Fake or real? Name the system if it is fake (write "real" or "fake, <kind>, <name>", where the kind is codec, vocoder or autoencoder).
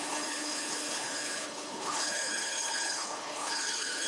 fake, codec, HILCodec